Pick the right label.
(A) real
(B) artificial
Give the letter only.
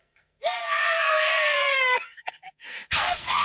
B